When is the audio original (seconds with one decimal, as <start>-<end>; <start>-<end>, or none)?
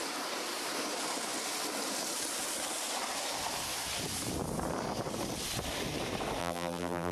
0.0-6.4